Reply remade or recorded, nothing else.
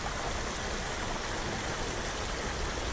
recorded